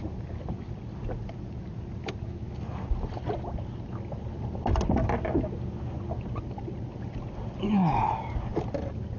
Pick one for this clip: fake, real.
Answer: real